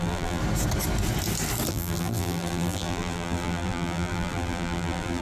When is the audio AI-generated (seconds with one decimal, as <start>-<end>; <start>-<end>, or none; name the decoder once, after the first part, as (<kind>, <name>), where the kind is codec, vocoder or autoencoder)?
0.0-0.4 (vocoder, BigVGAN v2); 1.7-5.2